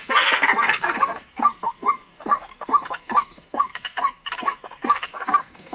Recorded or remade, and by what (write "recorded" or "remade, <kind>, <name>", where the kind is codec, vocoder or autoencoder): remade, codec, SNAC